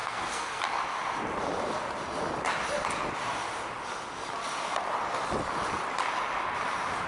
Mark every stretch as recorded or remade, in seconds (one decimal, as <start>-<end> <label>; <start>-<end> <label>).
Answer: 0.0-0.6 remade; 0.6-7.1 recorded